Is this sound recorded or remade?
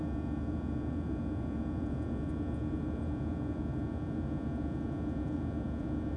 remade